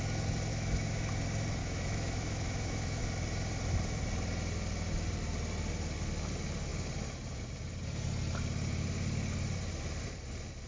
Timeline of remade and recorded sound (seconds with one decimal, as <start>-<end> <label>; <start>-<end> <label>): 0.0-0.5 recorded; 0.5-1.1 remade; 1.1-1.6 recorded; 1.6-3.0 remade; 3.0-10.7 recorded